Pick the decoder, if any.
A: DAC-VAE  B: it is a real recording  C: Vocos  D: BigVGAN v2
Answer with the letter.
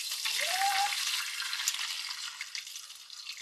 B